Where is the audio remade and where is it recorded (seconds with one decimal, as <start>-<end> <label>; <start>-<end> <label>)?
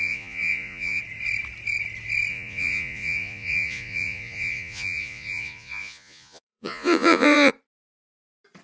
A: 0.0-1.0 remade; 1.0-2.3 recorded; 2.3-7.5 remade; 7.5-8.6 recorded